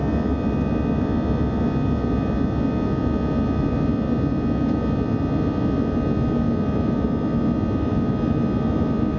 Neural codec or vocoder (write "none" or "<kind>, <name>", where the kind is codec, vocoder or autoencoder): none